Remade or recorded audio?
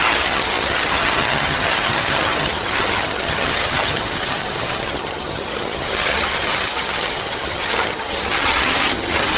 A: remade